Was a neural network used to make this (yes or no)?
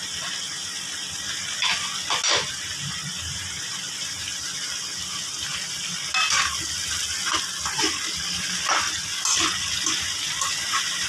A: no